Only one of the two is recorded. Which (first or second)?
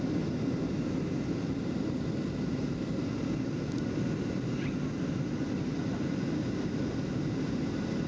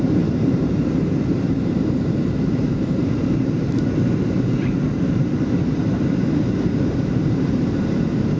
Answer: first